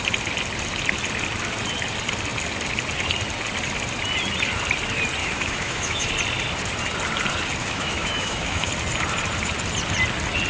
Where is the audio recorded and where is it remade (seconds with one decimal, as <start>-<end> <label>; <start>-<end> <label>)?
0.0-5.2 recorded; 5.2-6.1 remade; 6.1-7.6 recorded; 7.6-8.7 remade; 8.7-10.5 recorded